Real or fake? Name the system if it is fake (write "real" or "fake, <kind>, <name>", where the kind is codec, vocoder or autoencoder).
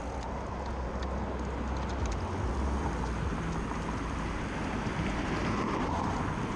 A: real